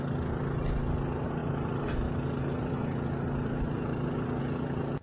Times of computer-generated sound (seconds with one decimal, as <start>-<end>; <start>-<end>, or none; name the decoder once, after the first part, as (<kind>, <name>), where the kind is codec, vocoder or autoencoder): 1.4-4.4 (vocoder, BigVGAN v2)